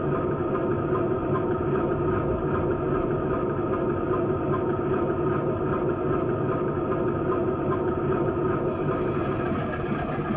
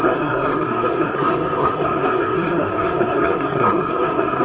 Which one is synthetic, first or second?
second